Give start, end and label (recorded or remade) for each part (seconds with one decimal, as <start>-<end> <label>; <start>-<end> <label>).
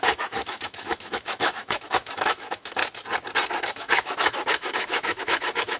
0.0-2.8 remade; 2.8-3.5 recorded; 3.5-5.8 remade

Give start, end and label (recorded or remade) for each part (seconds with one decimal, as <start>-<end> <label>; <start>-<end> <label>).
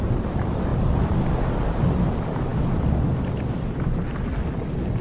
0.0-5.0 recorded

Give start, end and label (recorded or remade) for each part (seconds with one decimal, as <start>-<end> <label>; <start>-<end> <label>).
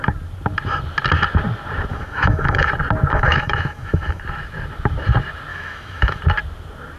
0.0-1.9 recorded; 1.9-2.7 remade; 2.7-3.1 recorded; 3.1-4.2 remade; 4.2-5.5 recorded; 5.5-6.2 remade; 6.2-7.0 recorded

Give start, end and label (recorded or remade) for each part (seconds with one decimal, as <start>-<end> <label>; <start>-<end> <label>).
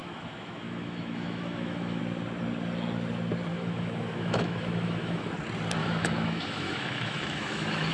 0.0-2.0 remade; 2.0-3.5 recorded; 3.5-5.3 remade; 5.3-5.8 recorded; 5.8-7.9 remade